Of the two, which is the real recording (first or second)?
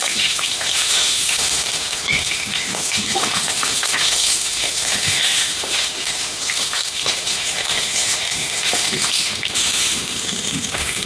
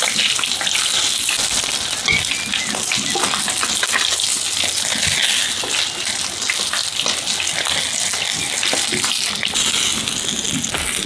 second